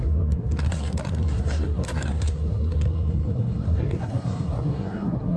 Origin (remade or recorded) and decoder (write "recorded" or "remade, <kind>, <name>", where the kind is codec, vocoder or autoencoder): remade, codec, SNAC